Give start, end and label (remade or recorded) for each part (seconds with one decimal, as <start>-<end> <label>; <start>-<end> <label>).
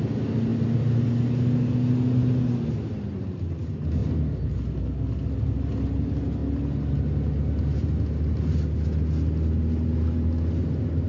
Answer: 0.0-11.1 recorded